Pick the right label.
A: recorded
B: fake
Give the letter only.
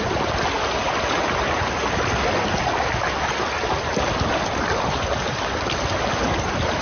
A